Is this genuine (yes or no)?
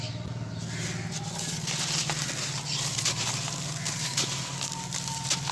yes